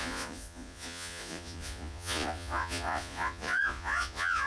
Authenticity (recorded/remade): remade